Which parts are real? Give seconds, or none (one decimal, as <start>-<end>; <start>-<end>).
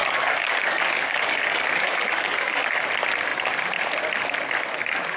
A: 2.8-5.2